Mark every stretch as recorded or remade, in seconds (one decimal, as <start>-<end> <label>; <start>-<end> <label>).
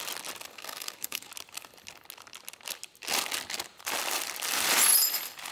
0.0-0.5 recorded; 0.5-1.3 remade; 1.3-5.5 recorded